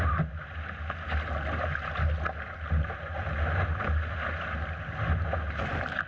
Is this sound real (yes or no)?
yes